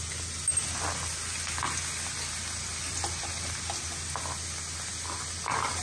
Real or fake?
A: real